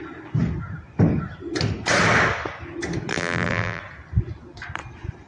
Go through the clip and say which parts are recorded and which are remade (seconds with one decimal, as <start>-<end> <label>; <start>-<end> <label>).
0.0-3.1 recorded; 3.1-3.8 remade; 3.8-5.3 recorded